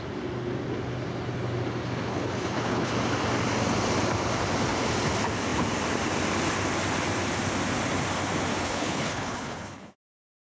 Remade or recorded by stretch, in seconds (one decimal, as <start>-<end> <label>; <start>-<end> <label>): 0.0-2.1 recorded; 2.1-2.9 remade; 2.9-8.5 recorded; 8.5-9.9 remade; 9.9-10.5 recorded